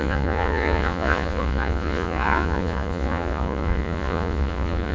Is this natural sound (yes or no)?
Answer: no